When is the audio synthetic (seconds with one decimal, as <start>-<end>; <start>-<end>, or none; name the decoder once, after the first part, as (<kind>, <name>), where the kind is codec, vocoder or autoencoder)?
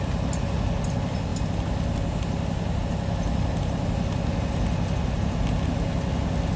none